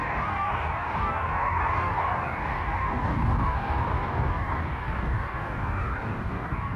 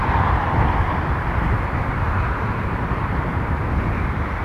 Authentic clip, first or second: second